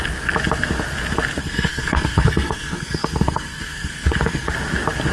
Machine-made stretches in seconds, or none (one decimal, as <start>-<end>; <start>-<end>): 1.4-4.5